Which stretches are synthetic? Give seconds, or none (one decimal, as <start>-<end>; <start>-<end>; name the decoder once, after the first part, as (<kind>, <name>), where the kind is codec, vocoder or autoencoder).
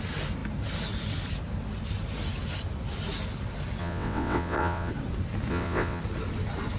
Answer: 3.8-4.9 (vocoder, WaveNeXt); 5.5-6.0